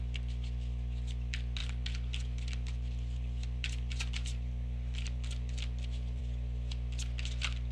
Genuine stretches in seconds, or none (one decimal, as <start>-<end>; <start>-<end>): 0.0-1.6; 6.2-7.7